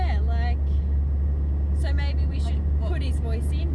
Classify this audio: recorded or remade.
recorded